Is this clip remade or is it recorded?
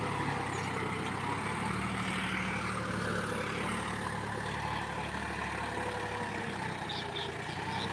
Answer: recorded